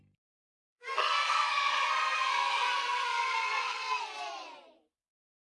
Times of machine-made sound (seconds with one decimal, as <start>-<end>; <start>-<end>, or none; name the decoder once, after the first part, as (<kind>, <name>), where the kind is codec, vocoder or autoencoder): 0.7-4.0 (codec, SNAC)